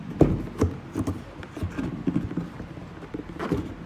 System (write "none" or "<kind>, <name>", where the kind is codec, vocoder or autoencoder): none